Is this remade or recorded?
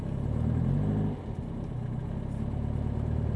recorded